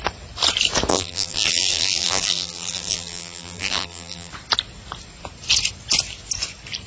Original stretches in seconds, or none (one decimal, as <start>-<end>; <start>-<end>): 0.0-0.9; 4.3-6.9